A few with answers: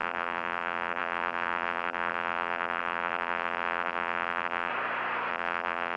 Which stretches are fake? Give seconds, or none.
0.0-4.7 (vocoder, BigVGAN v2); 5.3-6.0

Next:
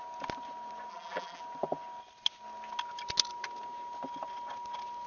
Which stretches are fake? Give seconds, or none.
0.9-1.4 (vocoder, BigVGAN v2)